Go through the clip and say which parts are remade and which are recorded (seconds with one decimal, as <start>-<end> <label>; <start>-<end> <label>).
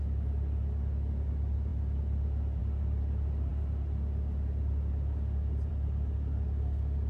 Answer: 0.0-7.1 recorded